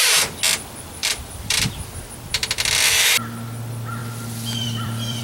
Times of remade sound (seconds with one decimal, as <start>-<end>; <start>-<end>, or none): 1.0-2.1; 4.0-5.2